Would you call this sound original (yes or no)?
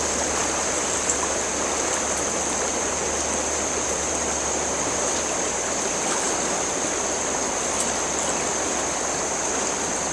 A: no